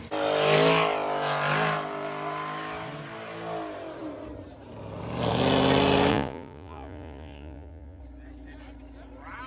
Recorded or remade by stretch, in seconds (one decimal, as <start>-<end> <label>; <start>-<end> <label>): 0.0-6.1 recorded; 6.1-8.0 remade; 8.0-9.5 recorded